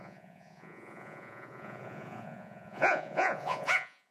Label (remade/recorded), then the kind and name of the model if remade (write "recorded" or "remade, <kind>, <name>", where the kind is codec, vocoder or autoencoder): remade, vocoder, Vocos